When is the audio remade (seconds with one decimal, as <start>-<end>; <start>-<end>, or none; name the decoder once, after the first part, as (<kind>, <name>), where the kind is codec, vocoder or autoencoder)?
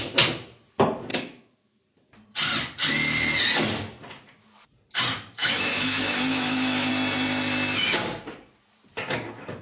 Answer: 1.1-1.8 (autoencoder, DAC-VAE); 5.4-6.9